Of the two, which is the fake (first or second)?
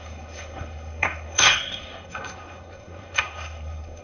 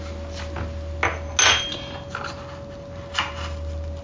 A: first